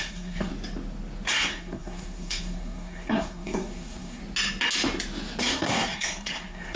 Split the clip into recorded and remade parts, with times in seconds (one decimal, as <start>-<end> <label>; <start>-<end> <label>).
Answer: 0.0-0.5 remade; 0.5-1.3 recorded; 1.3-4.2 remade; 4.2-5.4 recorded; 5.4-6.8 remade